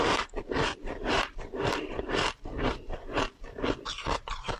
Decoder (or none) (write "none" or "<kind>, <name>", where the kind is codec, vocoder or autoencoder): vocoder, BigVGAN v2